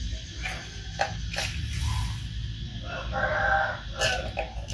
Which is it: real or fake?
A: real